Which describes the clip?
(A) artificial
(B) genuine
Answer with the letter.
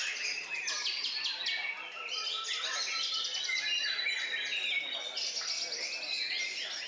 B